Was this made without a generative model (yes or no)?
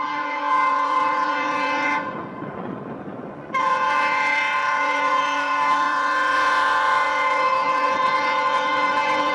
no